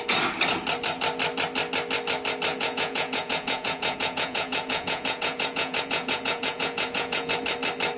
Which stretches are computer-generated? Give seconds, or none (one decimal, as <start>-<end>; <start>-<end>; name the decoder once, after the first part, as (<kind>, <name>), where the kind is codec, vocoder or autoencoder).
2.5-7.3 (vocoder, Vocos)